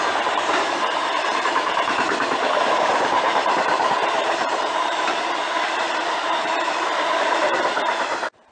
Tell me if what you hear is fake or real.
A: fake